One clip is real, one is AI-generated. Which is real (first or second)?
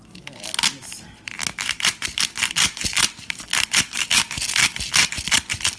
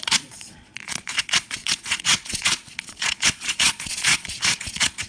first